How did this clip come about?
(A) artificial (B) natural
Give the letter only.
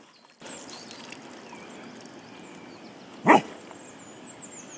B